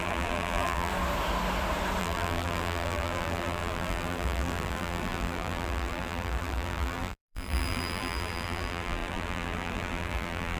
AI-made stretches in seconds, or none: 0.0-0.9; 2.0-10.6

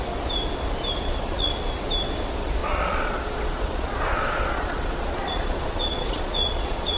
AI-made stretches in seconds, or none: 1.0-1.5; 2.6-7.0